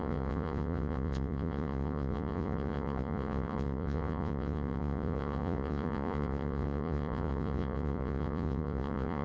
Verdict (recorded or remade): remade